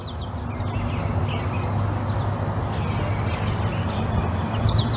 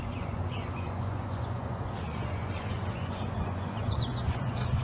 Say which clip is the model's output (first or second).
second